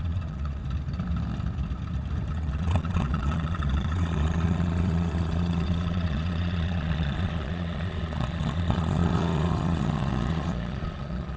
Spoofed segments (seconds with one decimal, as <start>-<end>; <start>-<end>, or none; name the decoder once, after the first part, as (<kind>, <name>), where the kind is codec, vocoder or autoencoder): 0.0-0.6 (vocoder, Vocos); 2.3-11.4

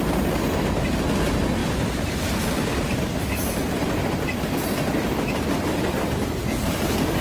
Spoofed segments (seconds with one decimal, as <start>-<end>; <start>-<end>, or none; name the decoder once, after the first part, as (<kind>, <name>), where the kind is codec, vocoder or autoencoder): none